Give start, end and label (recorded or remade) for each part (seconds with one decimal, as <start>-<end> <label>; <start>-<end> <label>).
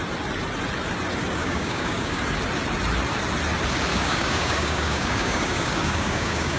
0.0-1.4 recorded; 1.4-2.2 remade; 2.2-3.9 recorded; 3.9-6.6 remade